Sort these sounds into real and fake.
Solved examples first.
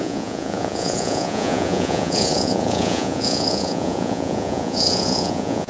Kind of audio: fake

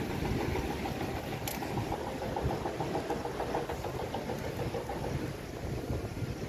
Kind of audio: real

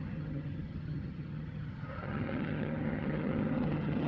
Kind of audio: fake